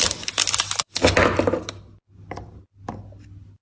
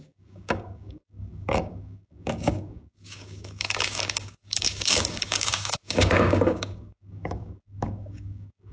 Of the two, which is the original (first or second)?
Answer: first